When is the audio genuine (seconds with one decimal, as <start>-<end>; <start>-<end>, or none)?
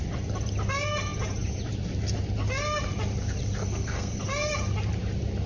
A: 0.0-3.6; 4.2-5.5